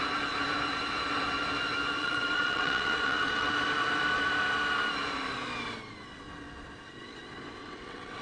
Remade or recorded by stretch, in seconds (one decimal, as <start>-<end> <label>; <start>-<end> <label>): 0.0-2.0 recorded; 2.0-3.5 remade; 3.5-7.6 recorded; 7.6-8.2 remade